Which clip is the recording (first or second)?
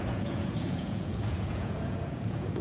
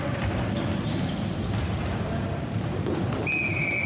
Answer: second